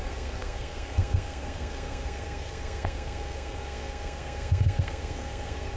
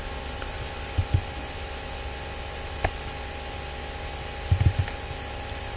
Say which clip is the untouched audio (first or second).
second